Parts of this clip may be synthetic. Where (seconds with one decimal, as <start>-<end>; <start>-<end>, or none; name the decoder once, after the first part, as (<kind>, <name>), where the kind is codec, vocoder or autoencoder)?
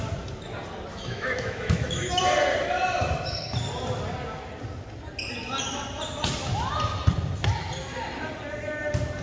0.9-2.2 (autoencoder, DAC-VAE)